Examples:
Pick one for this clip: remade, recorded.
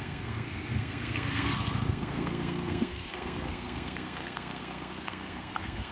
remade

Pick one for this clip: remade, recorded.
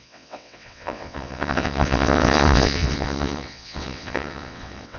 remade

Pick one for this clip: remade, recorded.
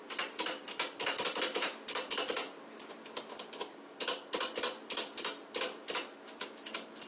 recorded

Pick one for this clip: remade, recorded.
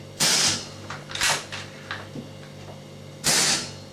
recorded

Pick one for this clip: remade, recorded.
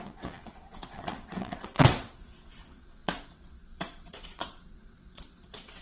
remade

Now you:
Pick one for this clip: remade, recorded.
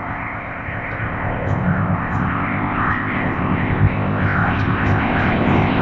remade